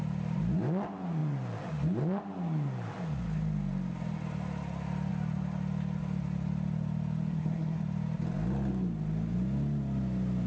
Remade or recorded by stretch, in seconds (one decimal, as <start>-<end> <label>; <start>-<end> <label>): 0.0-7.3 recorded; 7.3-7.8 remade; 7.8-10.5 recorded